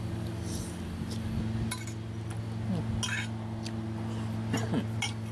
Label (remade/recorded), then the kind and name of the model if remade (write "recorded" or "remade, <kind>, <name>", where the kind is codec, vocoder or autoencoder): recorded